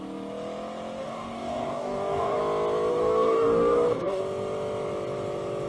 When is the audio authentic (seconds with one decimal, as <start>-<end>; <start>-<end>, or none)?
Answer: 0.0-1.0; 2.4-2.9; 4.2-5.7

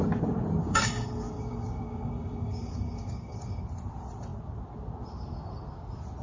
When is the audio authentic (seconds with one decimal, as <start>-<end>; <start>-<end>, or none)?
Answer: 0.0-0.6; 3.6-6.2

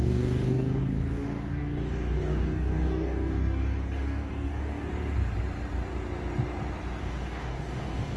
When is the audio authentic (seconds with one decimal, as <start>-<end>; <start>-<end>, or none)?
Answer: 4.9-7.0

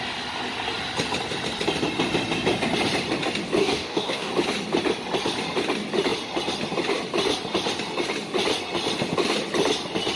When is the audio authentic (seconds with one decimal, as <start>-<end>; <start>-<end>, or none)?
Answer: 0.0-3.6; 4.3-10.2

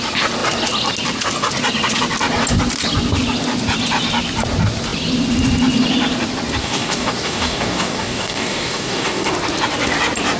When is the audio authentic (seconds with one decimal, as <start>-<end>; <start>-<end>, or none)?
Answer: 0.0-6.6; 9.3-10.4